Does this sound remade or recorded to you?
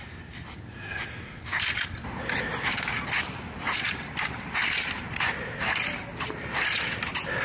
recorded